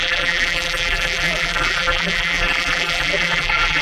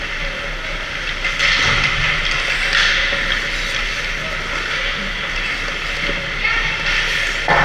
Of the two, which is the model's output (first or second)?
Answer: first